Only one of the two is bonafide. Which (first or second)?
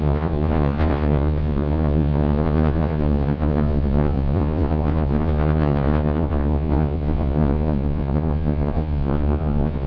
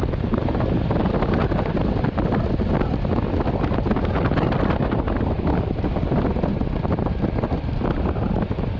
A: second